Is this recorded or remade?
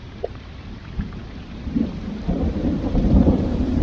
remade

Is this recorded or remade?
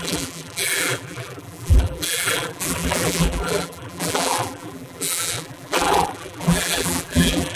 remade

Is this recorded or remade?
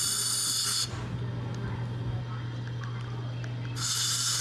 recorded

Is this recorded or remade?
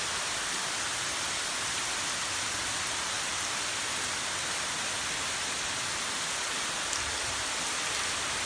recorded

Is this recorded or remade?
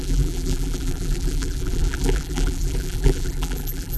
remade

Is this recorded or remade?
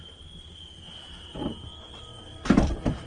remade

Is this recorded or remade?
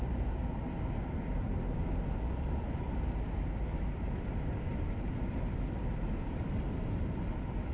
recorded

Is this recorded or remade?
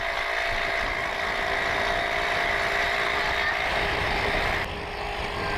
recorded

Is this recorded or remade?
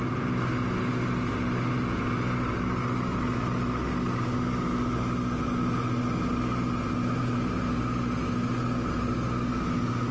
recorded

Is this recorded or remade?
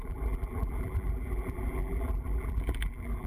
remade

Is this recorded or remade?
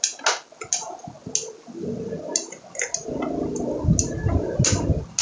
recorded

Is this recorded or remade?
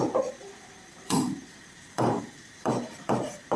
remade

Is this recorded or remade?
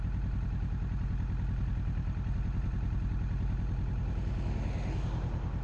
recorded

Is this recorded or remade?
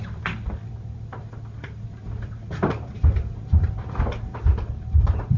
remade